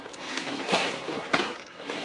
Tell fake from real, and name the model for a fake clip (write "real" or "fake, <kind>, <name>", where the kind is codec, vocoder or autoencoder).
fake, codec, SNAC